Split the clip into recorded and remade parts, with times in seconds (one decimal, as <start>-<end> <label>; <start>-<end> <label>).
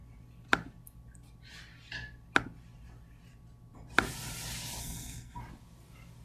0.0-4.8 recorded; 4.8-5.4 remade; 5.4-6.2 recorded